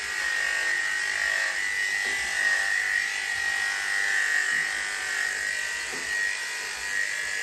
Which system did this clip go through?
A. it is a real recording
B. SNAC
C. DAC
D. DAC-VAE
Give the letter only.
A